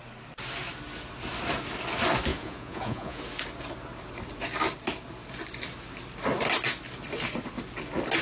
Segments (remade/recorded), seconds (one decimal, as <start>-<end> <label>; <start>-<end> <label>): 0.0-2.3 recorded; 2.3-3.2 remade; 3.2-8.2 recorded

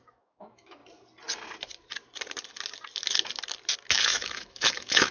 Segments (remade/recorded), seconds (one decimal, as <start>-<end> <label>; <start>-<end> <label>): 0.0-0.8 remade; 0.8-3.9 recorded; 3.9-5.1 remade

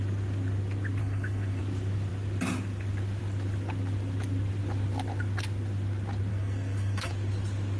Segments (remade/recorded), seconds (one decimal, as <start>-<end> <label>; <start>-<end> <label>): 0.0-1.0 recorded; 1.0-1.6 remade; 1.6-6.3 recorded; 6.3-7.1 remade; 7.1-7.8 recorded